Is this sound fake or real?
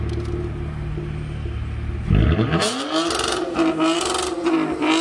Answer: real